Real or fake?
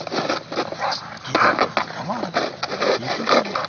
real